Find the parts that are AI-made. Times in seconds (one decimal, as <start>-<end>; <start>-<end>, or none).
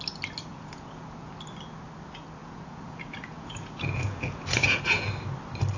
0.5-1.3; 2.4-5.1